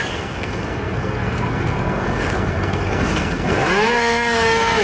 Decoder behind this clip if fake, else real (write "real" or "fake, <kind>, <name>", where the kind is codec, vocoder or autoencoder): fake, codec, SNAC